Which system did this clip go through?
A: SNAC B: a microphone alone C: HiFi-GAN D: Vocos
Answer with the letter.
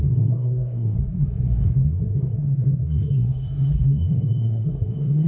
A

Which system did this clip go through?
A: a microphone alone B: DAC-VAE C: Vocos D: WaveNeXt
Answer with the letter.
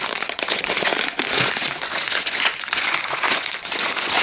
C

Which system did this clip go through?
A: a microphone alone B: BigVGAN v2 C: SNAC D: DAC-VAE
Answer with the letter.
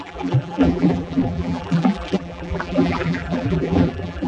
B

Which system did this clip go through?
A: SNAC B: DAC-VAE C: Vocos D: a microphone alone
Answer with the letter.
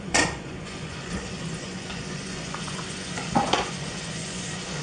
C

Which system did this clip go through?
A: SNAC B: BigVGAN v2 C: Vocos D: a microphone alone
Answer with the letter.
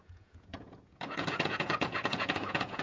C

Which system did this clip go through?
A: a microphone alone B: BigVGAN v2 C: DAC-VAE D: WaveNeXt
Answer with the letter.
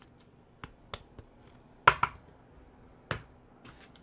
A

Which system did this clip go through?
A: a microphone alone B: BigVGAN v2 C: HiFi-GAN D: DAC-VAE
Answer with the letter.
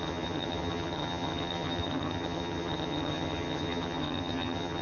C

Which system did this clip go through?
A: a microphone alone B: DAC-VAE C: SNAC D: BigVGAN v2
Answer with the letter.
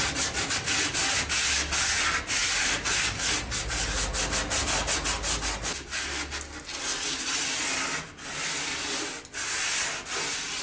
A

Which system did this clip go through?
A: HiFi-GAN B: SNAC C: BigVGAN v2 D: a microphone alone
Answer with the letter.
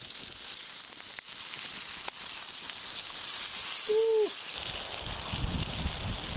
D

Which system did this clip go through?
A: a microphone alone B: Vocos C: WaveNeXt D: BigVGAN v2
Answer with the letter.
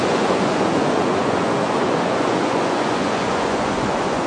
B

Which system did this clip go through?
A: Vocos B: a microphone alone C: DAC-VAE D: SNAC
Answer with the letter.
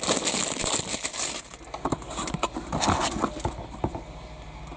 B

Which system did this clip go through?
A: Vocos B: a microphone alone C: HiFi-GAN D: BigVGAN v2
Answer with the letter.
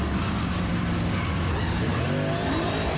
D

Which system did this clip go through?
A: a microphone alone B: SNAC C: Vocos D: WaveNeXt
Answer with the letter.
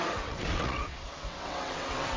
D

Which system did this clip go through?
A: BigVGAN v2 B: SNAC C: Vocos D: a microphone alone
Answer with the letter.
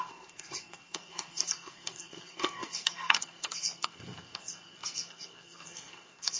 B